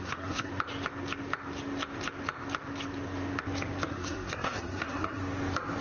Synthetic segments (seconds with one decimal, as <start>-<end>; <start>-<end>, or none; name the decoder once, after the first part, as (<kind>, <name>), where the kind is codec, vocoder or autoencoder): 0.0-0.5 (codec, SNAC); 3.9-5.2